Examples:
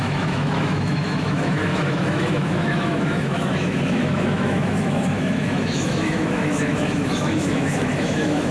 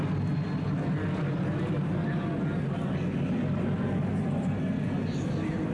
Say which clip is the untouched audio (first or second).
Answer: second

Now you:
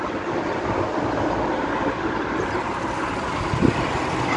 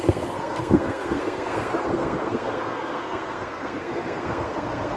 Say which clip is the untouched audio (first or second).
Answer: first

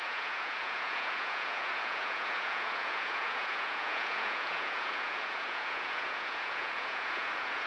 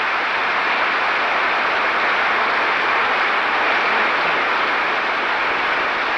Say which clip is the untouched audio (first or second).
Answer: second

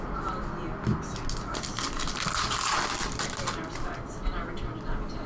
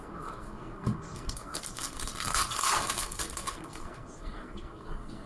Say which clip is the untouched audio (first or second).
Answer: first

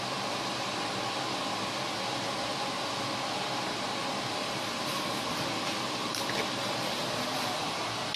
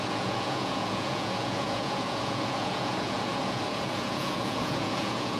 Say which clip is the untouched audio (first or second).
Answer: first